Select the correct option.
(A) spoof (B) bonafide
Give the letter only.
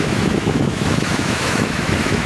A